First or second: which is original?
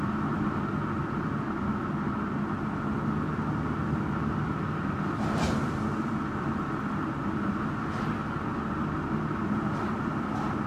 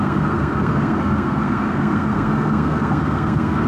first